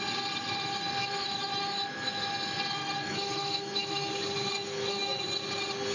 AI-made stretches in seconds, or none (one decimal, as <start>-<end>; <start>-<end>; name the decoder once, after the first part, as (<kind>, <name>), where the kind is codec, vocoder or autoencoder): 1.0-2.3 (autoencoder, DAC-VAE); 2.8-4.1; 4.6-5.2